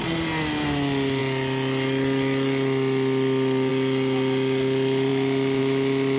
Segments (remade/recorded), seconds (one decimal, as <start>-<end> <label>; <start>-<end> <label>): 0.0-6.2 recorded